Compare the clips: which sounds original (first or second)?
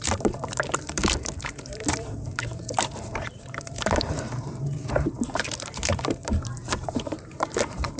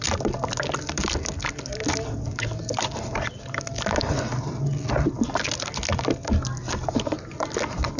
second